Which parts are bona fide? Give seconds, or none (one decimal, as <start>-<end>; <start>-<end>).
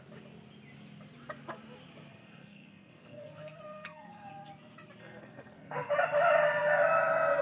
0.0-2.1; 4.3-5.0; 5.9-7.4